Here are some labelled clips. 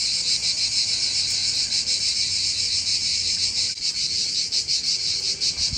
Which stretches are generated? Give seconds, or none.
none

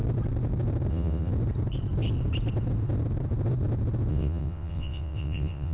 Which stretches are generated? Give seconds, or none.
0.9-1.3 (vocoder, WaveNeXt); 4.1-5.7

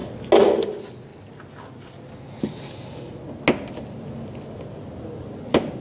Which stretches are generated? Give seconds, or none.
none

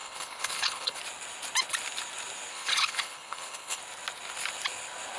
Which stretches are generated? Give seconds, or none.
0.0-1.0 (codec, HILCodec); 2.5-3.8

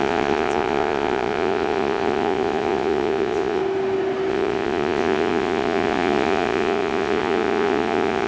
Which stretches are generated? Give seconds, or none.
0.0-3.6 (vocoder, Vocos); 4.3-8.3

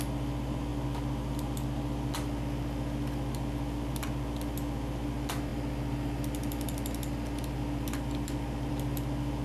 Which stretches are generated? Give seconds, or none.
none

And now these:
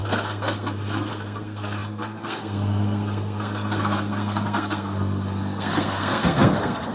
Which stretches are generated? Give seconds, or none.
0.0-6.9 (codec, SNAC)

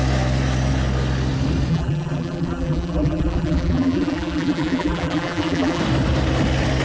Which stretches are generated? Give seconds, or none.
1.7-5.8 (vocoder, BigVGAN v2)